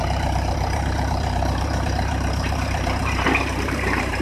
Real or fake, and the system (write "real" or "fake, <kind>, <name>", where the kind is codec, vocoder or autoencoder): fake, vocoder, BigVGAN v2